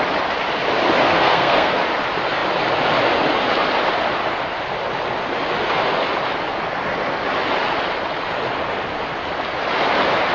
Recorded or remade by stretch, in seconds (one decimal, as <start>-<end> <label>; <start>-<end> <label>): 0.0-1.1 recorded; 1.1-1.8 remade; 1.8-10.3 recorded